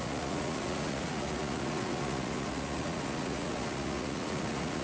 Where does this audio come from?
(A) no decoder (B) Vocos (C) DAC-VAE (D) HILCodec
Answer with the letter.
B